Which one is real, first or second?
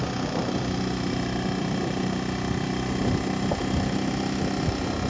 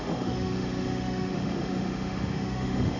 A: first